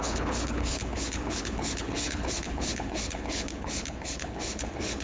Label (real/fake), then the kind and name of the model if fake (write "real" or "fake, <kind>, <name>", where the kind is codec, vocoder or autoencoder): fake, codec, HILCodec